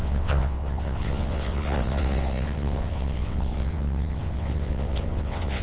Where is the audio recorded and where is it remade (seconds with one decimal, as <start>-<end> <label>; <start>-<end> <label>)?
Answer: 0.0-5.6 remade